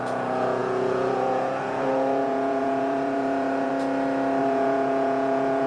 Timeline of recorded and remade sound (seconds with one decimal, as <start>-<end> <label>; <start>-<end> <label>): 0.0-3.7 remade; 3.7-4.4 recorded; 4.4-5.7 remade